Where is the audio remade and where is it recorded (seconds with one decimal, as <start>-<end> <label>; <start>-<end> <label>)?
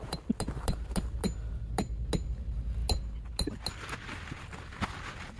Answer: 0.0-5.4 recorded